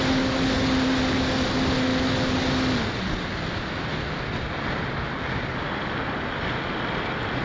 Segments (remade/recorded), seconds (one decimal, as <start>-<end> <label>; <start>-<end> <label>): 0.0-7.4 recorded